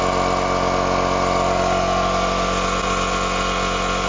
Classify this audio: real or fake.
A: real